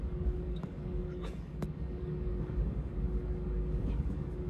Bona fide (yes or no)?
no